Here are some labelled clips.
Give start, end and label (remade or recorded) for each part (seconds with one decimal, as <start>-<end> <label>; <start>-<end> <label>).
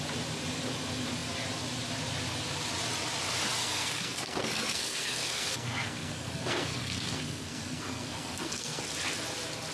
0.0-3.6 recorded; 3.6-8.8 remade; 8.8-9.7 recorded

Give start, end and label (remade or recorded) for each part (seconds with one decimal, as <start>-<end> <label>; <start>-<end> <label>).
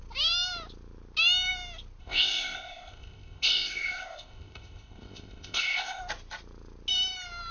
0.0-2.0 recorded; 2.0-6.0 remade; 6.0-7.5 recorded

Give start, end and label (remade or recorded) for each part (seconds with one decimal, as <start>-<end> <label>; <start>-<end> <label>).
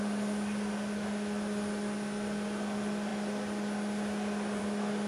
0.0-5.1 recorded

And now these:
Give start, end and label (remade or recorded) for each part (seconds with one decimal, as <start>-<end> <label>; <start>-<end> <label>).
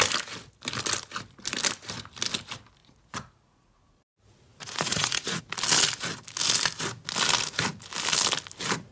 0.0-2.8 recorded; 2.8-5.4 remade; 5.4-8.9 recorded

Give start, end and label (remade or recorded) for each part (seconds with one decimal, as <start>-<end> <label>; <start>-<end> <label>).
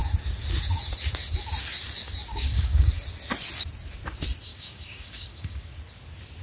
0.0-2.3 recorded; 2.3-2.9 remade; 2.9-4.5 recorded; 4.5-5.8 remade; 5.8-6.4 recorded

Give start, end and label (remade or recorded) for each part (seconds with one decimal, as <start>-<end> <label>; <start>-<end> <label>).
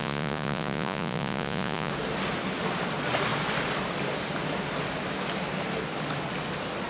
0.0-1.9 remade; 1.9-6.9 recorded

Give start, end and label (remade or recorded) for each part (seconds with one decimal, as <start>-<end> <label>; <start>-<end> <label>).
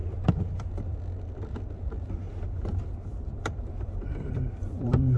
0.0-5.2 remade